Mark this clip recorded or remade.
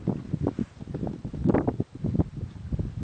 recorded